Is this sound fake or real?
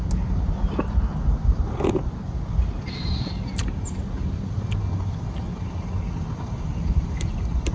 real